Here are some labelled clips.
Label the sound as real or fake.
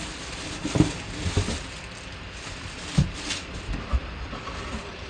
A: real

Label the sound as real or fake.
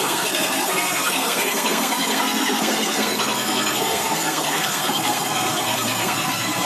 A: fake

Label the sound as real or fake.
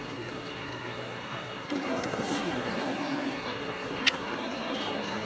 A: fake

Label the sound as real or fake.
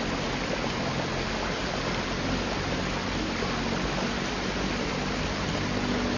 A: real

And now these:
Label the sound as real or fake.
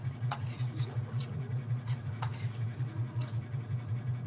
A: fake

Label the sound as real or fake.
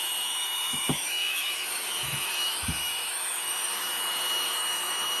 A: fake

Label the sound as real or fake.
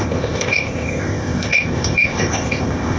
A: fake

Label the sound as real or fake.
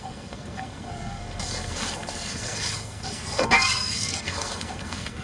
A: fake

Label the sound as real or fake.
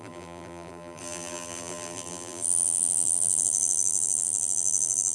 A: fake